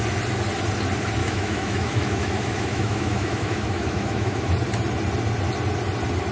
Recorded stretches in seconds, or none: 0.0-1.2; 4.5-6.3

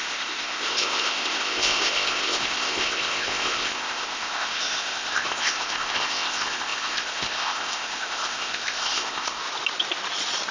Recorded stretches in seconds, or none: 9.4-10.5

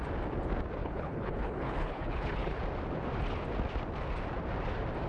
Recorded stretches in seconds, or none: 0.0-0.8; 2.6-5.1

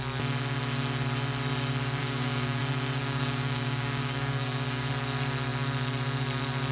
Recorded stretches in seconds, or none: 0.0-2.0; 2.6-3.0; 4.9-6.7

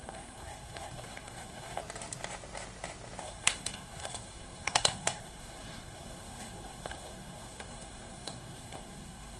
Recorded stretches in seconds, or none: 1.8-3.2

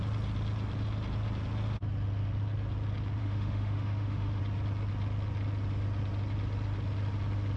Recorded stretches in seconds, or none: 0.0-3.2; 4.4-7.6

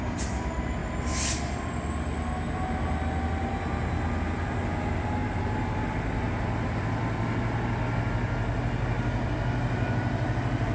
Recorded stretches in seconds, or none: 0.0-10.7